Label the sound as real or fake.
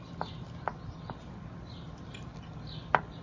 fake